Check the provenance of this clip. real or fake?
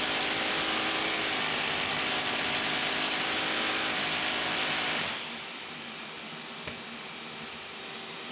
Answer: fake